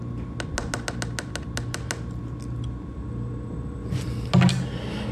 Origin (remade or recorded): recorded